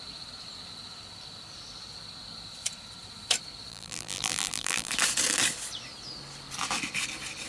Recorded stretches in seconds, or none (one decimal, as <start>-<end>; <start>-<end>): 0.0-3.7; 4.9-7.5